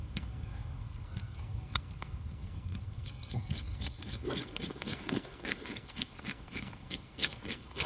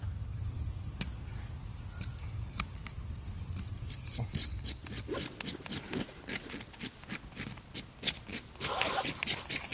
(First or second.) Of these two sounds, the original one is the second